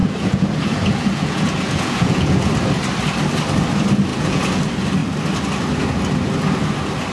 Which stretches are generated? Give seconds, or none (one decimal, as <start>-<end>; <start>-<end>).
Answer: 0.0-2.5; 4.1-4.6